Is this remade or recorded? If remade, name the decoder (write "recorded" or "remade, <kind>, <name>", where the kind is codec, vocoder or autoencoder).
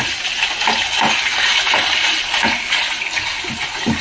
recorded